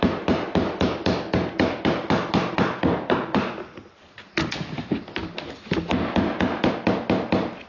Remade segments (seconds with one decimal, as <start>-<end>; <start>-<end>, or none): none